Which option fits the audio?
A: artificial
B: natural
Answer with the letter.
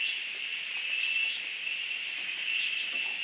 B